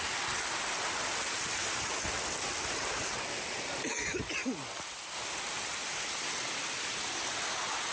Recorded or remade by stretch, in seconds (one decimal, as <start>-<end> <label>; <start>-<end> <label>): 0.0-7.9 recorded